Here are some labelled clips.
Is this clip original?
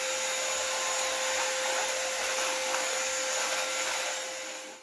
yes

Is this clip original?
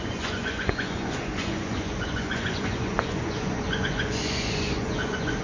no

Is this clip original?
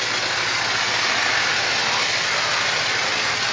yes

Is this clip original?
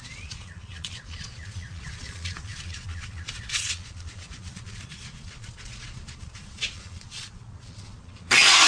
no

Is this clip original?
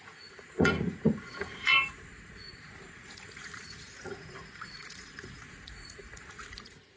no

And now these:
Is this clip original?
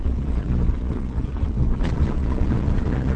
no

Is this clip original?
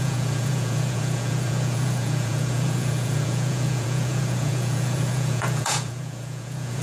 no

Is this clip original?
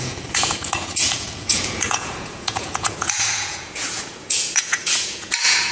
no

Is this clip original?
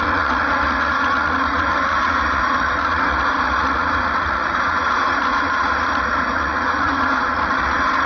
no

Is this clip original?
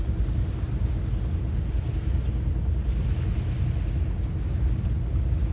yes